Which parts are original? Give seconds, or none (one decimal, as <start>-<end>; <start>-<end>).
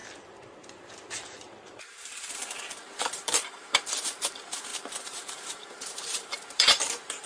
none